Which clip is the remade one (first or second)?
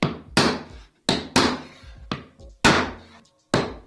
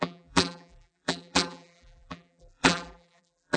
second